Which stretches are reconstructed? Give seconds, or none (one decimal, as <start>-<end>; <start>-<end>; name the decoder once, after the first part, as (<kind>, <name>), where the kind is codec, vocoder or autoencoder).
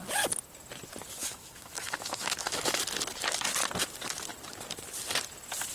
1.2-2.8 (autoencoder, DAC-VAE)